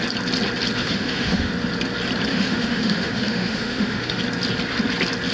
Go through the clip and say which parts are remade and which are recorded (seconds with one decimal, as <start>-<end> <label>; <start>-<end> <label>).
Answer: 0.0-0.8 recorded; 0.8-1.5 remade; 1.5-2.3 recorded; 2.3-4.2 remade; 4.2-5.3 recorded